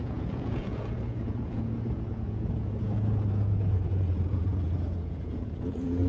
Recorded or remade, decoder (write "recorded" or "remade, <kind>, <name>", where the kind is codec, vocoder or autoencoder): remade, vocoder, Vocos